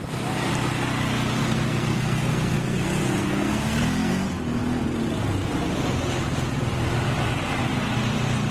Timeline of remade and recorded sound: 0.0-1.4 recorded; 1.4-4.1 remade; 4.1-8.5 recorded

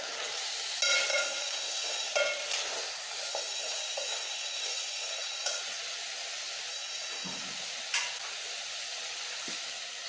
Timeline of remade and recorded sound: 0.0-1.1 recorded; 1.1-2.1 remade; 2.1-3.3 recorded; 3.3-5.6 remade; 5.6-6.7 recorded; 6.7-7.4 remade; 7.4-10.1 recorded